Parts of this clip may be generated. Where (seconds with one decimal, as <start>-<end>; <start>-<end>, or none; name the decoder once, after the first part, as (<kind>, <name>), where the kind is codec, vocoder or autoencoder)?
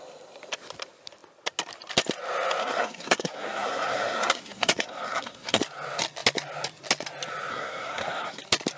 2.6-5.6 (codec, SNAC); 7.5-8.4